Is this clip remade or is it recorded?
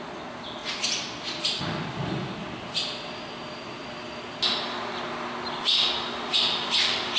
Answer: recorded